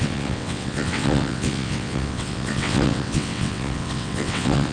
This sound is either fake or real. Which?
fake